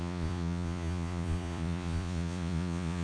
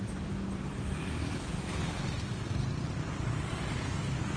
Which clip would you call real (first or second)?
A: second